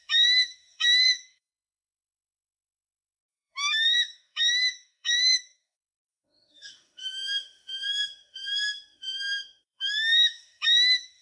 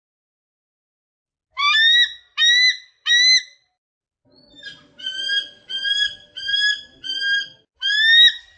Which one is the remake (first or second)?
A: first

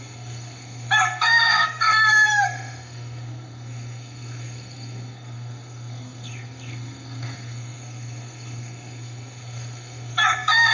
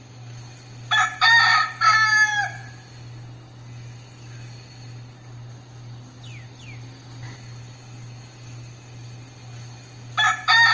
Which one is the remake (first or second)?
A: first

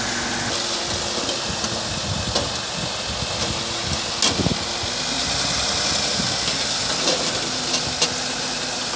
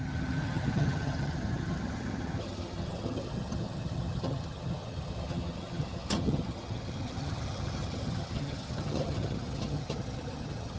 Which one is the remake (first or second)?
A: second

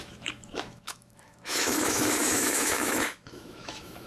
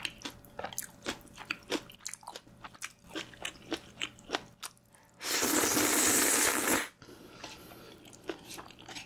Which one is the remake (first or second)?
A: first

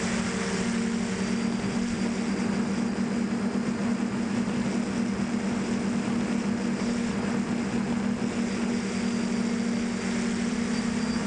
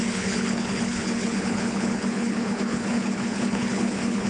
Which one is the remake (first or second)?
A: second